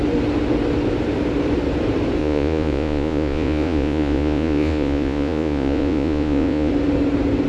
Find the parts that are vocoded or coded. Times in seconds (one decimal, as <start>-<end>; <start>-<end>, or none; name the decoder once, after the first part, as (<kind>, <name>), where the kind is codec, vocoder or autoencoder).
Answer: 2.2-6.7 (vocoder, Vocos)